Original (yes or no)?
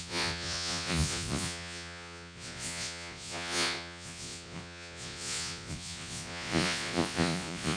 no